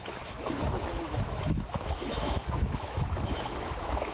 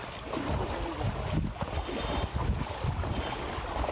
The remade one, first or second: first